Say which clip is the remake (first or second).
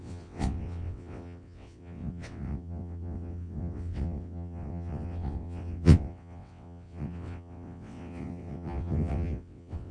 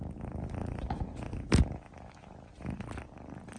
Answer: first